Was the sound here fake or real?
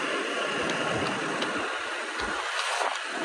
real